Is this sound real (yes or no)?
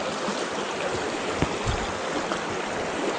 yes